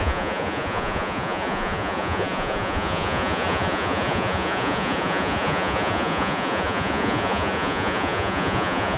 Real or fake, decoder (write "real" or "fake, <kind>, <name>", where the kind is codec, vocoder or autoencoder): fake, vocoder, Vocos